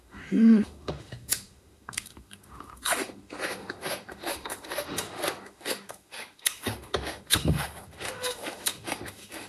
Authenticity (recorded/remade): remade